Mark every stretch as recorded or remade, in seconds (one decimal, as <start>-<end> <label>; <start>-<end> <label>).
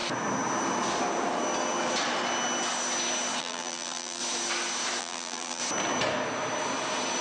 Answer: 0.0-3.4 recorded; 3.4-4.2 remade; 4.2-5.0 recorded; 5.0-5.6 remade; 5.6-7.2 recorded